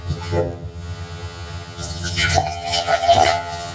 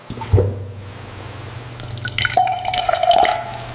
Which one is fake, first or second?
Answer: first